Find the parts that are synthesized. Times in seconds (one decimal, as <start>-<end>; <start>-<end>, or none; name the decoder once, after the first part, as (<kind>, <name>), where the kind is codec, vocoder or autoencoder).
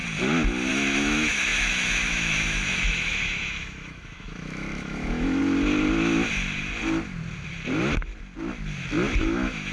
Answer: 0.7-5.4 (autoencoder, DAC-VAE); 9.2-9.7